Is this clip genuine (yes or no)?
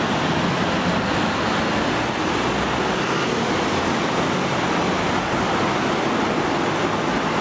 yes